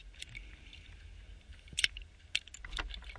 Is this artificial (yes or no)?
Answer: no